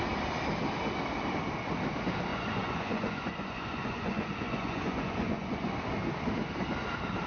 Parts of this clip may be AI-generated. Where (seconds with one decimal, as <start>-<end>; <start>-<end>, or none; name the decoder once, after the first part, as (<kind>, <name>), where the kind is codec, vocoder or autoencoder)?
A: 2.3-5.7 (vocoder, Vocos)